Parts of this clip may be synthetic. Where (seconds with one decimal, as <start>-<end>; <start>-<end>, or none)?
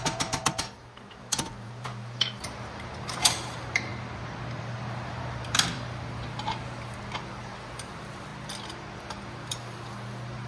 0.0-3.9; 4.6-8.3; 9.0-10.5